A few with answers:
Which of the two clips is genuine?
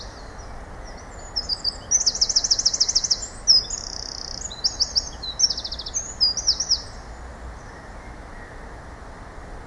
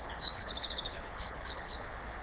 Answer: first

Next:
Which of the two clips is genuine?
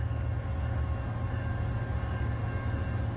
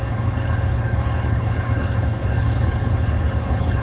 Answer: first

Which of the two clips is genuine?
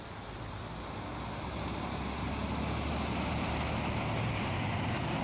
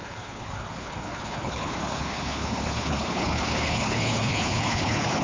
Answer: first